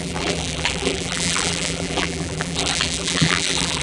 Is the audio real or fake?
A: fake